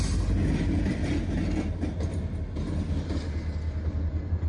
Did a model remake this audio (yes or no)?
no